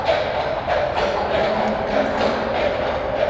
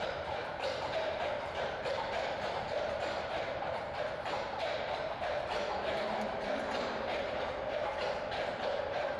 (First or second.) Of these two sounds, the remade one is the second